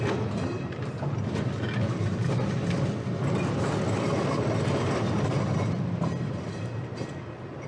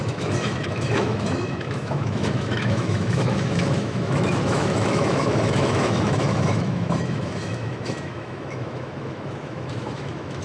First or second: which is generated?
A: second